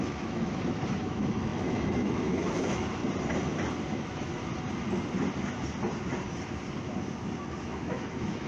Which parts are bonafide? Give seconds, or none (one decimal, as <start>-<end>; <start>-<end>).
3.0-3.9; 4.3-7.6